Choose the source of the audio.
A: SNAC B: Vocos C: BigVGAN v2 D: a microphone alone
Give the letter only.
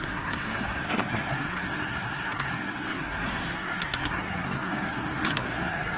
A